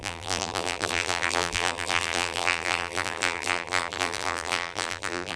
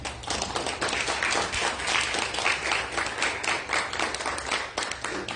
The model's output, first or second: first